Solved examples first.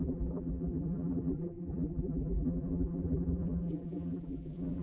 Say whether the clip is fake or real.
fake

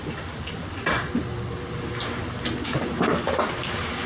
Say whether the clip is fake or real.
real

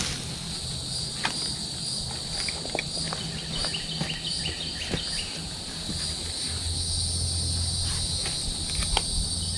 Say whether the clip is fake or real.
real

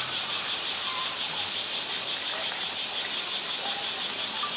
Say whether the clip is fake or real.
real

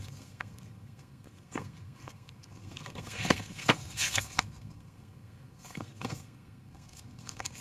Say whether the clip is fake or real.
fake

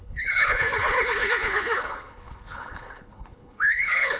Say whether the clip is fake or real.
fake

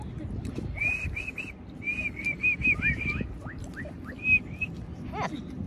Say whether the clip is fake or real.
real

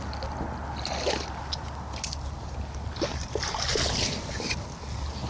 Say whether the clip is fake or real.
real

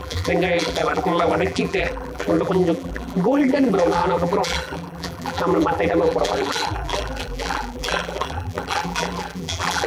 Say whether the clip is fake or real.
fake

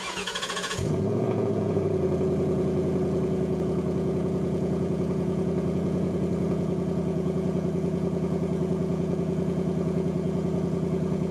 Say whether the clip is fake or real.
fake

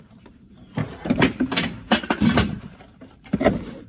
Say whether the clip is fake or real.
fake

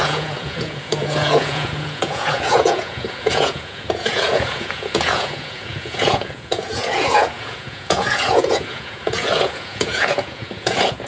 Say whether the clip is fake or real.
fake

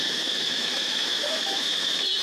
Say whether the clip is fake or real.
fake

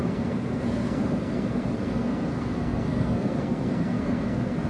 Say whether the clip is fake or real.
fake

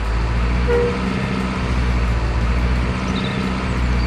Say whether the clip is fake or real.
real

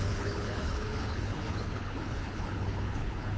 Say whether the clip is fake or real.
fake